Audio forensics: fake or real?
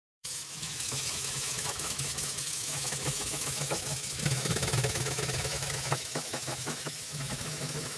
fake